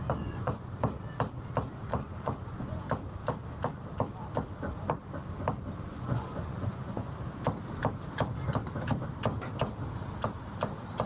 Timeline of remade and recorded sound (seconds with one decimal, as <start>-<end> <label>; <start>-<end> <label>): 0.0-0.7 remade; 0.7-1.9 recorded; 1.9-2.8 remade; 2.8-5.9 recorded; 5.9-7.1 remade; 7.1-11.1 recorded